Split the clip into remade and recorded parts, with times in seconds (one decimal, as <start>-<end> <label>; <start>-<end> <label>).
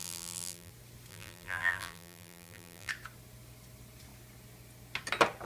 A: 0.0-0.7 remade; 0.7-1.1 recorded; 1.1-2.9 remade; 2.9-5.5 recorded